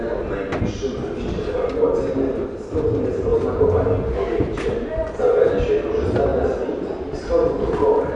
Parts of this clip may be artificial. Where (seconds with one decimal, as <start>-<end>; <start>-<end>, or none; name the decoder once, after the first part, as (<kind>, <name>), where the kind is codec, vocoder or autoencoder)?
none